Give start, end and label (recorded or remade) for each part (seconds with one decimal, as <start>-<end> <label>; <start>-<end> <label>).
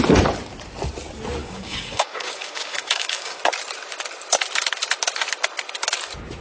0.0-1.4 recorded; 1.4-3.4 remade; 3.4-6.4 recorded